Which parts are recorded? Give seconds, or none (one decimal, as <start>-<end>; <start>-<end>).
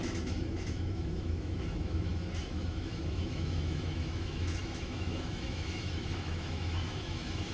none